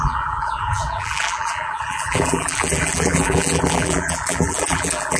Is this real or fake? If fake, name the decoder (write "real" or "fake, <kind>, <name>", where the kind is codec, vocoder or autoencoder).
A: fake, vocoder, BigVGAN v2